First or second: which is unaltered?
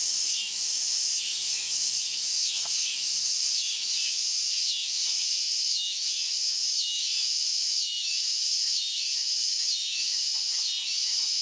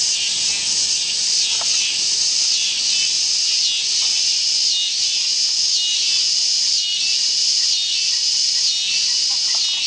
second